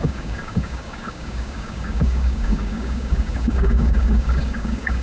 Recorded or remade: remade